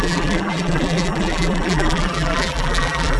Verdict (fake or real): fake